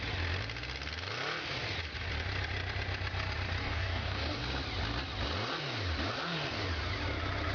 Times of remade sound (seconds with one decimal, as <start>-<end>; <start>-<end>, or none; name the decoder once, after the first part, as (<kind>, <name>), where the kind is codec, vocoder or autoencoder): 3.6-4.4 (codec, DAC)